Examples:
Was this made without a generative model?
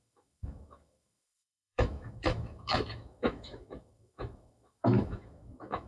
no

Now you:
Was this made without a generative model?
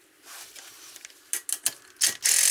yes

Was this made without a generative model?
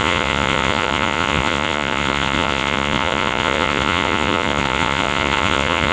no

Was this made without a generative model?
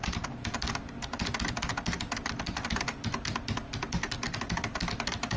yes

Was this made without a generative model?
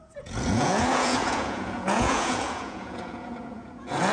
no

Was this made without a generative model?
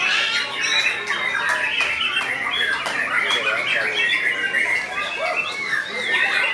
yes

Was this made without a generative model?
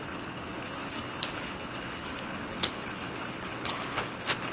no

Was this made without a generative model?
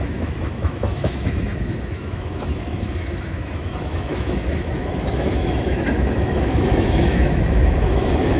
no